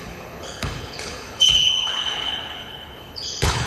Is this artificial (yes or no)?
yes